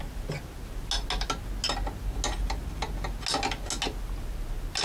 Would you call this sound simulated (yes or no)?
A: no